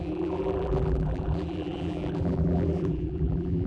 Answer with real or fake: fake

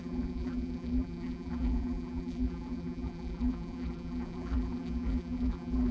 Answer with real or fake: fake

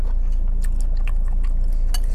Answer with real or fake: real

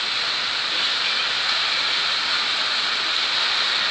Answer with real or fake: real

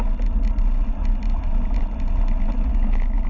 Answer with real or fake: real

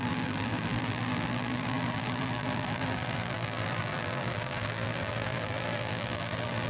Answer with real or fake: fake